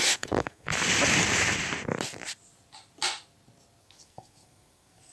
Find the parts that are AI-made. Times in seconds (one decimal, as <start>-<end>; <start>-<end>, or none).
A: 0.0-0.7; 3.8-5.1

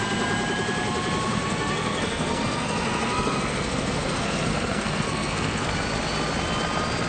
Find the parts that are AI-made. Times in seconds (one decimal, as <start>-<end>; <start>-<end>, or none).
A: 1.4-5.7

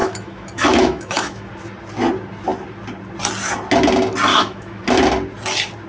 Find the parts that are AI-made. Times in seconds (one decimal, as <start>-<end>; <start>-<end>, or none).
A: 0.0-1.5; 4.3-4.8

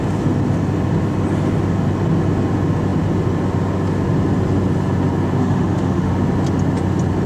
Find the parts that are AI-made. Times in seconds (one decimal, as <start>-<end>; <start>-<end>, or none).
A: 5.4-6.1

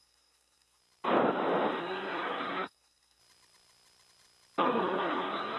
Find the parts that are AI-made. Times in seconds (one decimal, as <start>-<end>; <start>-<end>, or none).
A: 0.0-0.8; 1.8-3.2; 4.6-5.6